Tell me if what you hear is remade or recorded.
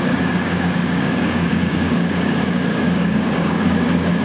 remade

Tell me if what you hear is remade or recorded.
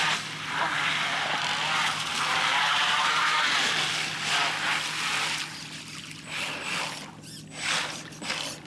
recorded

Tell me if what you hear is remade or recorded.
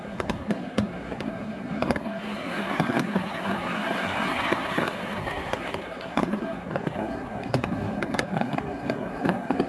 remade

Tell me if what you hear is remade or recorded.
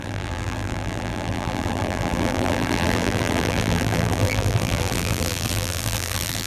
remade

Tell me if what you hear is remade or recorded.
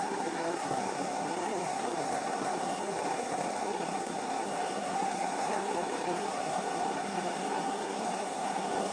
remade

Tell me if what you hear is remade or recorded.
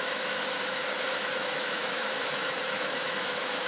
remade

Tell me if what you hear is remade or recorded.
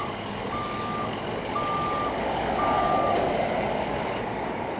remade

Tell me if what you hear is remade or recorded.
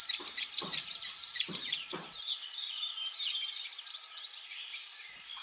remade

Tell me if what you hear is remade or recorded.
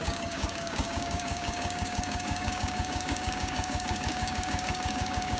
remade